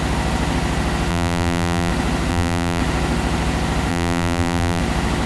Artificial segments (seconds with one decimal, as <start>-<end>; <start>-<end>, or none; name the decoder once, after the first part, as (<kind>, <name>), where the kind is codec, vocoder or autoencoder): 1.1-1.9 (vocoder, BigVGAN v2); 2.3-2.8; 3.9-4.8